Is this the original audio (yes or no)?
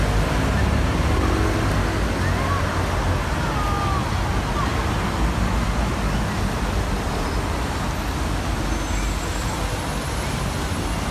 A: yes